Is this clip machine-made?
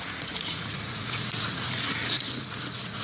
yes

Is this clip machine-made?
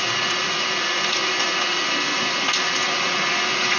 yes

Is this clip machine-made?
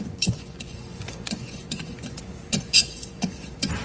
yes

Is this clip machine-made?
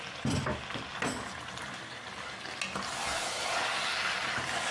no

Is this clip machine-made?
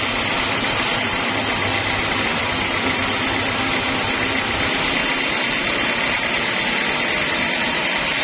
no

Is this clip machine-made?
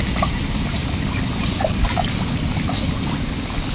no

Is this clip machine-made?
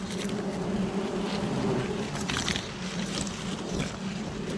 no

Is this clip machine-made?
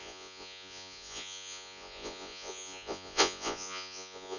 yes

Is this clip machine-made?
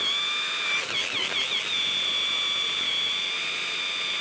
no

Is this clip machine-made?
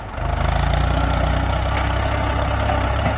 no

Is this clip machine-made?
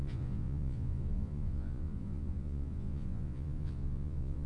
yes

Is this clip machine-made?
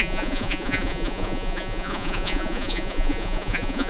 yes